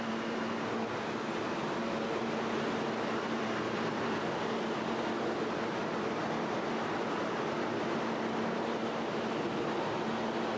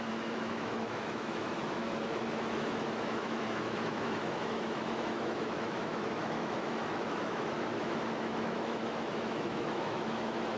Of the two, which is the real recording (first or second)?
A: first